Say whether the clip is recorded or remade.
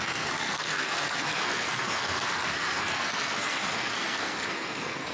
remade